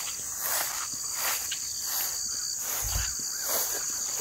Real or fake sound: real